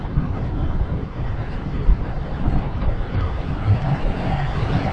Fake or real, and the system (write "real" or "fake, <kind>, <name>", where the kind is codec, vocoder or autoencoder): fake, codec, SNAC